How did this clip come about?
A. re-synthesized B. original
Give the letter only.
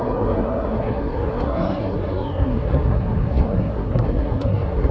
A